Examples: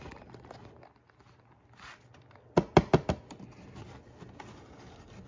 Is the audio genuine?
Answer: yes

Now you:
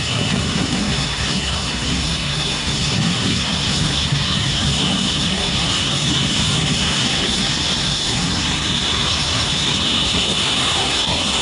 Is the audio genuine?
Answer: no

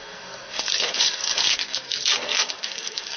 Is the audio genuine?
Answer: no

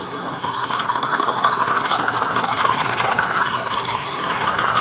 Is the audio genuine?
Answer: no